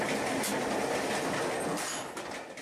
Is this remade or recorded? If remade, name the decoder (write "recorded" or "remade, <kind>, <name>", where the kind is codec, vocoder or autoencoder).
recorded